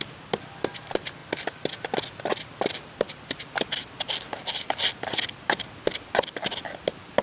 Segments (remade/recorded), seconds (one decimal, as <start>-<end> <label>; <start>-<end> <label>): 0.0-7.2 recorded